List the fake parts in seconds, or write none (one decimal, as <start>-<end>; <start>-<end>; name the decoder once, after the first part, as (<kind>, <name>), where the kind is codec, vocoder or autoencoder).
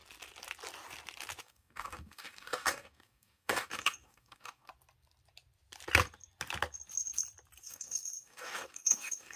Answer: 1.4-4.7 (codec, DAC); 7.6-9.4